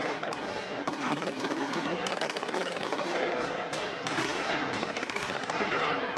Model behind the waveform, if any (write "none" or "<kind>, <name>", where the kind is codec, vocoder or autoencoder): codec, SNAC